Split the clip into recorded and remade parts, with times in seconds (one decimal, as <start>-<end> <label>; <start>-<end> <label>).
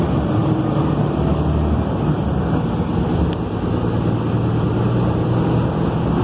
0.0-0.4 recorded; 0.4-1.3 remade; 1.3-6.2 recorded